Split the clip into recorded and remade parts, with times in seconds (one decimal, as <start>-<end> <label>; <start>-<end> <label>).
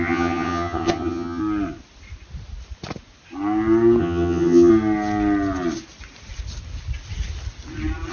0.0-1.4 remade; 1.4-4.0 recorded; 4.0-4.7 remade; 4.7-8.1 recorded